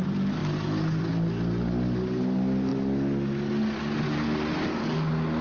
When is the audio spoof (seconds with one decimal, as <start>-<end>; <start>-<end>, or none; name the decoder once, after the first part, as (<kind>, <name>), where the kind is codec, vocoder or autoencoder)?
none